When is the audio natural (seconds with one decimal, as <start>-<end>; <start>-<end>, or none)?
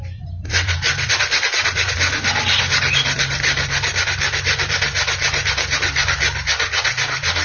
0.0-7.4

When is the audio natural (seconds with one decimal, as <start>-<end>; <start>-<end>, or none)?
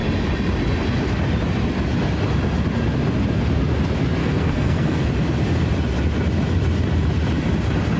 0.0-4.2; 5.1-8.0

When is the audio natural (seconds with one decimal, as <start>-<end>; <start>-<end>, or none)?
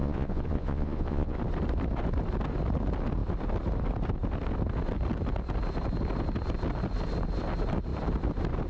1.4-8.7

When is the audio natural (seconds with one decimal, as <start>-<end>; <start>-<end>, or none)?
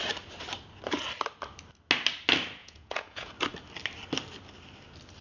0.0-2.6; 3.3-5.2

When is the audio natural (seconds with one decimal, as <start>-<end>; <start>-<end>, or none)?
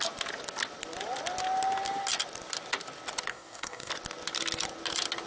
0.0-3.3; 3.9-5.3